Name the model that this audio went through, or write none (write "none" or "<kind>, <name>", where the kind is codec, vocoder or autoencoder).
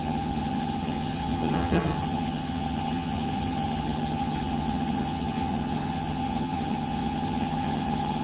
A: vocoder, HiFi-GAN